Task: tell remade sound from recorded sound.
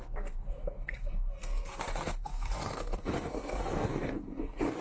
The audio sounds remade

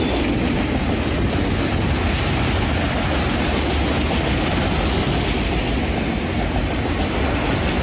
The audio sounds recorded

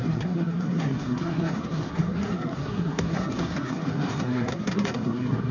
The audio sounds remade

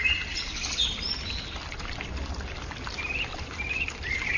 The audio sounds recorded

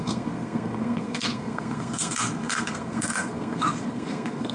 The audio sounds remade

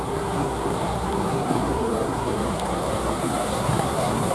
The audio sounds remade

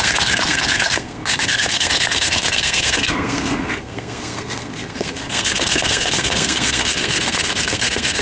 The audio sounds remade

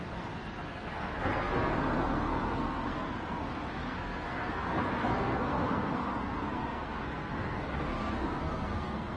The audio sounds remade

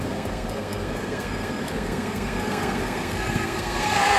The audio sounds remade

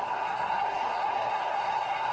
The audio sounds remade